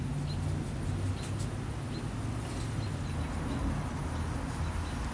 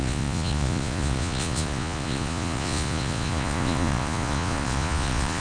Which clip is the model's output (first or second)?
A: second